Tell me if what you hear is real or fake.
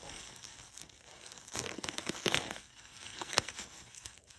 fake